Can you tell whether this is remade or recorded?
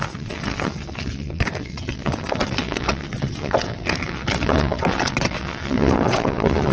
remade